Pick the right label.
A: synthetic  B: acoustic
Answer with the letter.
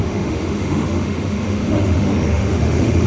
A